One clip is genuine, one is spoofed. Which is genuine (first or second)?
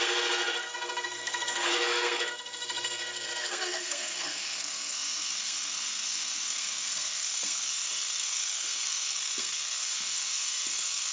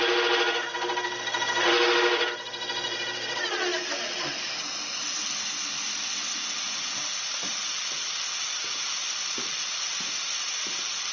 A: second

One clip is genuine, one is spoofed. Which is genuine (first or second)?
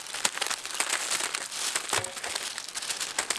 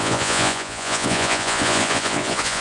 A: first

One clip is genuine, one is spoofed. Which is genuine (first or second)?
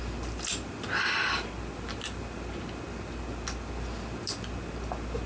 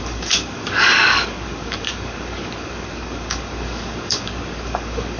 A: first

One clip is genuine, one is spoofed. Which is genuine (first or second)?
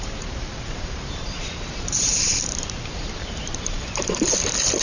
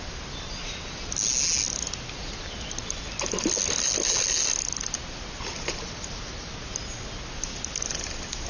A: second